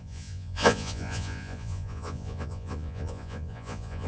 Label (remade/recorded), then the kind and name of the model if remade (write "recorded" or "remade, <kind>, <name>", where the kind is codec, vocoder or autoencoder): remade, vocoder, Vocos